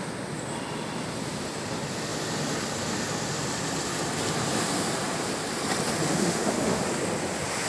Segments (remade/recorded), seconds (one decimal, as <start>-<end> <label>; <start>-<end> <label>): 0.0-6.1 recorded; 6.1-6.8 remade; 6.8-7.7 recorded